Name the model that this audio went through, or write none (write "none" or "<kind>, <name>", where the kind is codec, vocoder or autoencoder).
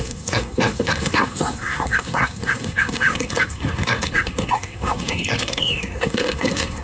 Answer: codec, SNAC